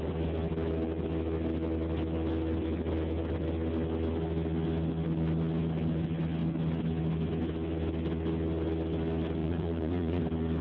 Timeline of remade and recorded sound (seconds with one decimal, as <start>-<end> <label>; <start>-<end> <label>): 0.0-9.4 recorded; 9.4-10.2 remade; 10.2-10.6 recorded